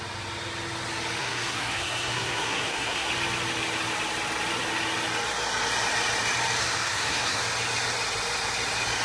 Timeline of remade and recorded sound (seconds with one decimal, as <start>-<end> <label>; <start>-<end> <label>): 0.0-1.2 recorded; 1.2-3.1 remade; 3.1-6.6 recorded; 6.6-7.4 remade; 7.4-9.0 recorded